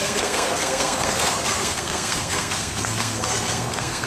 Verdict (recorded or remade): remade